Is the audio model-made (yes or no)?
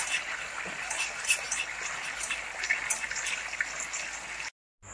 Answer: no